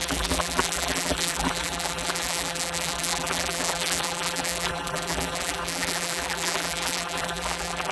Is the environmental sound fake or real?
fake